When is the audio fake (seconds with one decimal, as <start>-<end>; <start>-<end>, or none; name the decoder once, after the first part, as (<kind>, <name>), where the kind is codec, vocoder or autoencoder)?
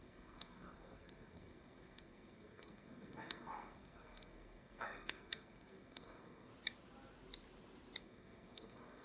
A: 0.0-6.5 (codec, SNAC); 8.0-9.0